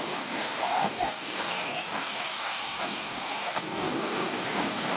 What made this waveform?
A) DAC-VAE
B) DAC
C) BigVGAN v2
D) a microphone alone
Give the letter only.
B